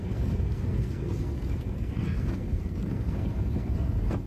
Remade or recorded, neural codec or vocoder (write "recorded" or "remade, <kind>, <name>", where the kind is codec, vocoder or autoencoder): remade, codec, SNAC